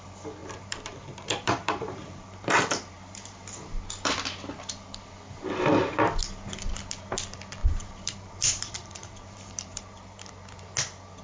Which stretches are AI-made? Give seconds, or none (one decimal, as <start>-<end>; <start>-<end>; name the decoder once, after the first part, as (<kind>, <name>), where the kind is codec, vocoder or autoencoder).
0.4-3.8 (vocoder, BigVGAN v2); 7.6-10.3